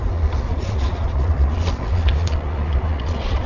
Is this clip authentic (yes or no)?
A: no